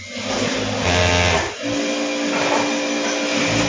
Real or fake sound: real